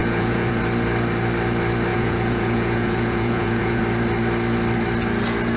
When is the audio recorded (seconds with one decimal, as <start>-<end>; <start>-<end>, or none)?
0.6-1.9; 3.8-5.6